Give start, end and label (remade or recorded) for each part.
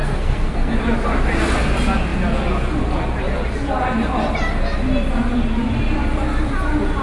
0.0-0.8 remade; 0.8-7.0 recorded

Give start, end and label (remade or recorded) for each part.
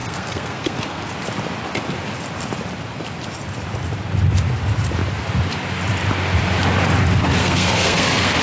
0.0-1.1 remade; 1.1-7.4 recorded; 7.4-8.4 remade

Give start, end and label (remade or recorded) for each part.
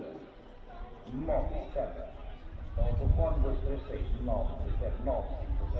0.0-5.8 recorded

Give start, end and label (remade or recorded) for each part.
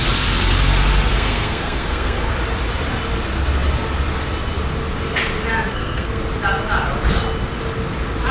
0.0-1.1 recorded; 1.1-2.3 remade; 2.3-5.7 recorded; 5.7-6.2 remade; 6.2-8.3 recorded